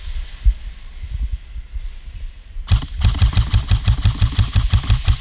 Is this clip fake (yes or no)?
no